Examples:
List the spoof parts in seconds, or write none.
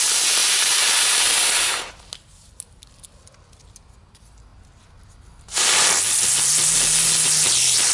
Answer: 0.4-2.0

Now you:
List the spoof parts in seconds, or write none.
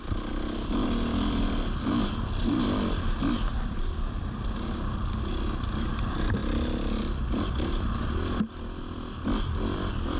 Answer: none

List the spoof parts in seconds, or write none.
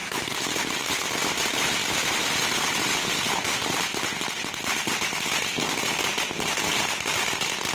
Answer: 0.0-1.2; 1.8-2.3